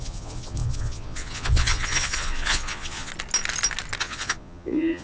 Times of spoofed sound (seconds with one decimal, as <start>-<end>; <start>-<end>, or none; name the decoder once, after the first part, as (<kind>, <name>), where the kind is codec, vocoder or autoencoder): 0.0-3.1 (vocoder, Vocos); 4.0-5.0